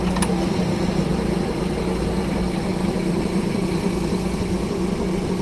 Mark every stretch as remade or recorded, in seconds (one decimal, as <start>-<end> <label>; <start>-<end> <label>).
0.0-2.7 recorded; 2.7-3.7 remade; 3.7-5.4 recorded